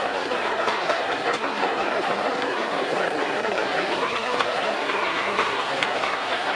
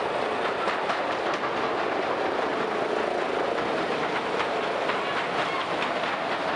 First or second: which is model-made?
first